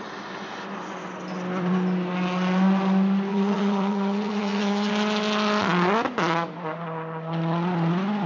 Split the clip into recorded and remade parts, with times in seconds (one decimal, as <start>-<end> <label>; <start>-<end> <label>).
0.0-3.3 recorded; 3.3-4.9 remade; 4.9-8.3 recorded